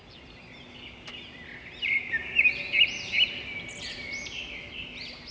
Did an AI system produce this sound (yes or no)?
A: no